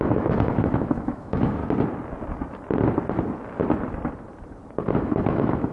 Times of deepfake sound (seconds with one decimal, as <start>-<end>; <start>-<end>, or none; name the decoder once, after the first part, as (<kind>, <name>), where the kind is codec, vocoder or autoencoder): 0.0-1.6 (autoencoder, DAC-VAE); 4.9-5.7